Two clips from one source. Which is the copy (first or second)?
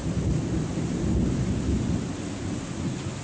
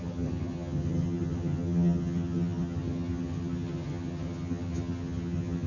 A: second